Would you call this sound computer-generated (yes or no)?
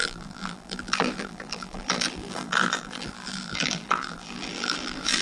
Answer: yes